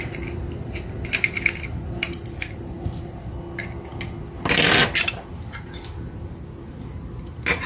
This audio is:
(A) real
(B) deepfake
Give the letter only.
A